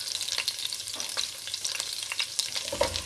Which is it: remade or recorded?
recorded